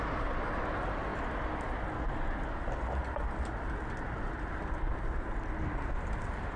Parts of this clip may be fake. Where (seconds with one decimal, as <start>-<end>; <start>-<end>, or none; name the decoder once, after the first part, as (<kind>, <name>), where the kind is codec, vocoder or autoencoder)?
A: none